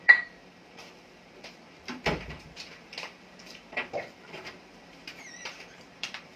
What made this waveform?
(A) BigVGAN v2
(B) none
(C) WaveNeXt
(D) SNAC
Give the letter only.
A